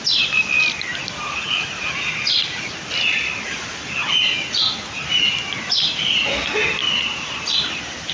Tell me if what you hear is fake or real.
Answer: real